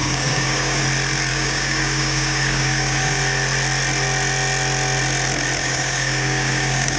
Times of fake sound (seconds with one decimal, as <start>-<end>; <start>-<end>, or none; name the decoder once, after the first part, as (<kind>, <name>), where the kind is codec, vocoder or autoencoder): 0.0-0.8 (codec, DAC); 1.3-3.2; 5.6-7.0

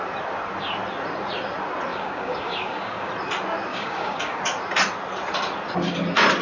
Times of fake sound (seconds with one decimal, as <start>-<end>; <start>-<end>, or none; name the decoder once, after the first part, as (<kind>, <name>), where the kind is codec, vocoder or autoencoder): 1.9-3.1 (codec, DAC); 3.7-4.4

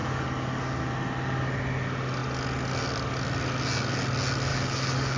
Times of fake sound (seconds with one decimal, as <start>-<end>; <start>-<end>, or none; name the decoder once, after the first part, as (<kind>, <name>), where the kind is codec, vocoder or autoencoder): 0.0-0.9 (codec, DAC); 4.5-5.2

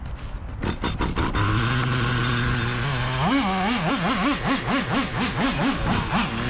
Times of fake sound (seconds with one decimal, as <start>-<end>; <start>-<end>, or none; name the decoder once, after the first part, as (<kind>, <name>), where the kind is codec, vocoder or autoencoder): 5.1-6.1 (codec, DAC)